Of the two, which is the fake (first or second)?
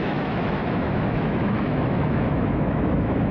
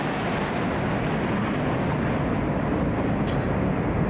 first